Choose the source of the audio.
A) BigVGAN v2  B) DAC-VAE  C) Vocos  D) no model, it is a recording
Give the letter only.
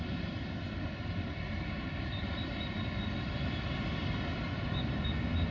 D